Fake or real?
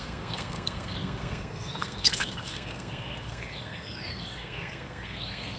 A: fake